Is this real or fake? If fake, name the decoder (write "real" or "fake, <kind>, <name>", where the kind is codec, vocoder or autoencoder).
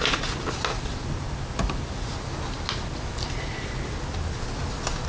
real